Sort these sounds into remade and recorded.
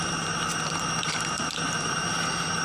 remade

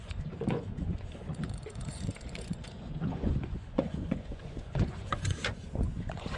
remade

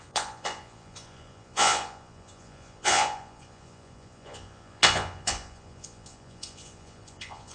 remade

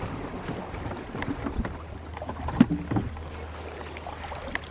recorded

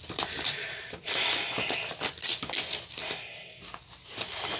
recorded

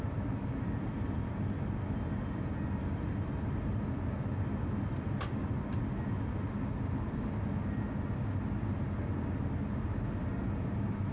recorded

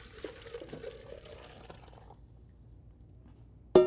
recorded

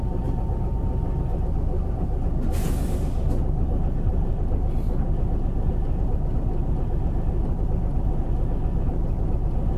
recorded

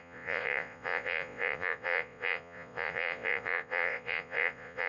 remade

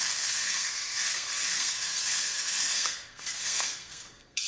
remade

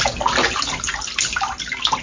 recorded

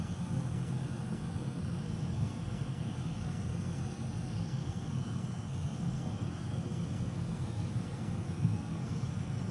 remade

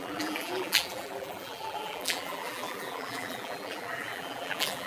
remade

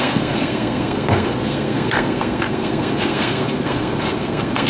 remade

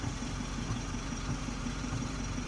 remade